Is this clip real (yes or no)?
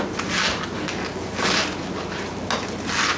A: yes